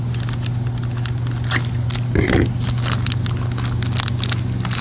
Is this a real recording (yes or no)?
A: yes